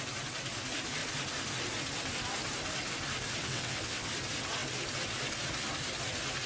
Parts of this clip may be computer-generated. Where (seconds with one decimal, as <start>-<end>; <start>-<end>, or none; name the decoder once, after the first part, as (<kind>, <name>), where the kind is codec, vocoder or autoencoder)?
3.4-4.1 (vocoder, WaveNeXt)